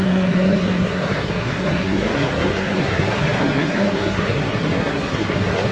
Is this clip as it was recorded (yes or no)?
no